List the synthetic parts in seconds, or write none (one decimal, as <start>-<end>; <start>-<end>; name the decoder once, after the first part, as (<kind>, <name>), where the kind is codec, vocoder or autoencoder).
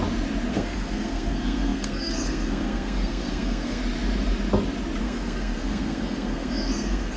0.5-3.8 (codec, SNAC); 5.0-7.2